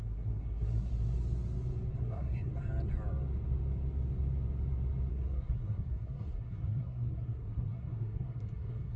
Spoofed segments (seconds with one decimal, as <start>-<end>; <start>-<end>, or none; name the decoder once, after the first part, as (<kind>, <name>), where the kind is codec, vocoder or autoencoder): 0.0-0.9 (codec, SNAC); 2.0-2.5; 5.1-9.0